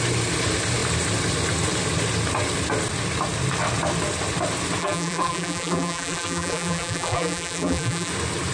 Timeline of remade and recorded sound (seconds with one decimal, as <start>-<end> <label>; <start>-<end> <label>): 0.0-4.8 recorded; 4.8-8.1 remade; 8.1-8.5 recorded